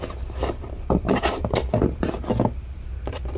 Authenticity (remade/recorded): recorded